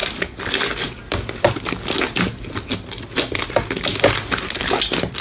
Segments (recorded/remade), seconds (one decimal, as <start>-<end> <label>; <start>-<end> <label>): 0.0-5.2 recorded